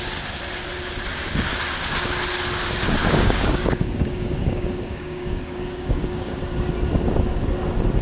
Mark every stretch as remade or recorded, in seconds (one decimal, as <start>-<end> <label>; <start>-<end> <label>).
0.0-1.1 recorded; 1.1-1.6 remade; 1.6-3.0 recorded; 3.0-6.4 remade; 6.4-8.0 recorded